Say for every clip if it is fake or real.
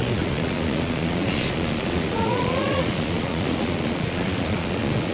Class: fake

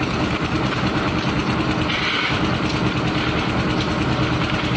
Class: real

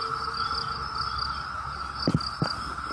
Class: real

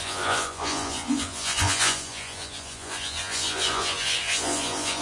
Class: fake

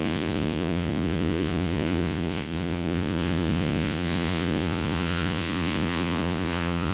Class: fake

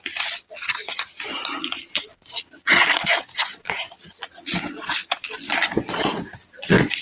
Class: fake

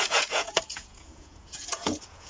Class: fake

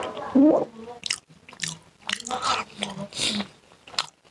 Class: real